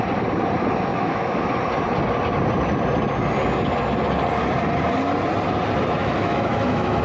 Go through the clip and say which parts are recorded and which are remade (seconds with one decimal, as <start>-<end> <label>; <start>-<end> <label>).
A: 0.0-0.9 recorded; 0.9-1.5 remade; 1.5-6.0 recorded; 6.0-7.0 remade